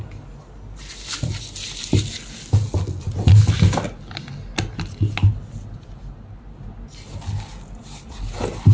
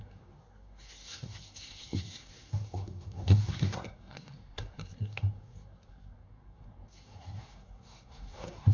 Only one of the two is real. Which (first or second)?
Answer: first